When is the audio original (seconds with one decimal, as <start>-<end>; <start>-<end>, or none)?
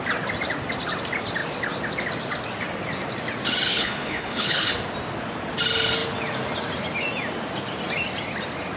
0.0-3.7; 4.7-8.8